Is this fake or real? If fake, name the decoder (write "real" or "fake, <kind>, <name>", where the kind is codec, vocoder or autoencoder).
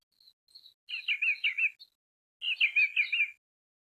real